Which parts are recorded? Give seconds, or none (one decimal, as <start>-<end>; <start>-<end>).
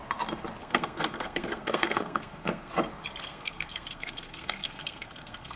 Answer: 0.0-0.6; 2.7-3.3